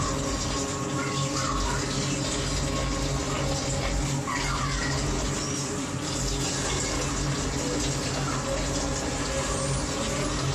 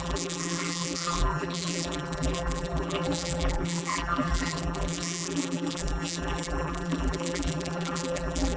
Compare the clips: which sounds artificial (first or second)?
second